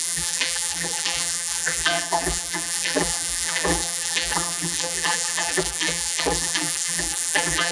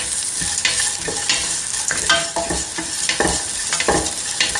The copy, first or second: first